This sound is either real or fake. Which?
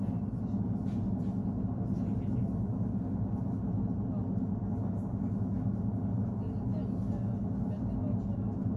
real